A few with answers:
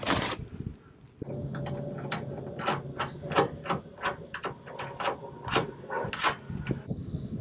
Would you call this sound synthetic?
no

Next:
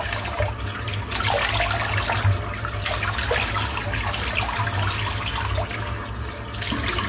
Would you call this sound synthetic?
no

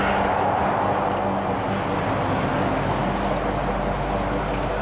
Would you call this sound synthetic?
no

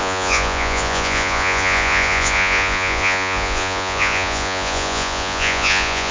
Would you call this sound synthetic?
yes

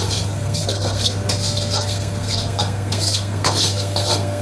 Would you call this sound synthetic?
yes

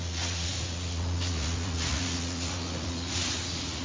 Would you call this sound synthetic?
yes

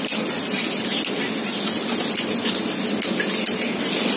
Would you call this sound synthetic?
no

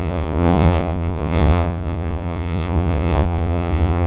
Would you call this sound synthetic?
yes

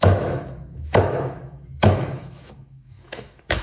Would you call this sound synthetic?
yes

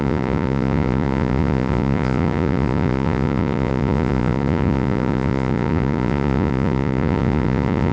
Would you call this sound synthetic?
yes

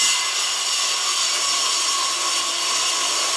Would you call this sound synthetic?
no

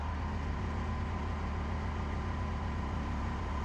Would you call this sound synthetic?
no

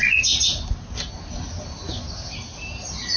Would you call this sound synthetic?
no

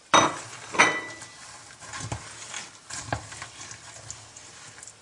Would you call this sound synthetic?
no